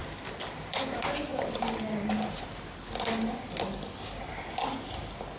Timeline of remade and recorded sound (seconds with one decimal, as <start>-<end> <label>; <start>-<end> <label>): 0.0-5.4 recorded